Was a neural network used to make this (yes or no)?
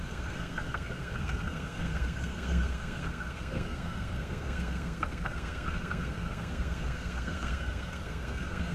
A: yes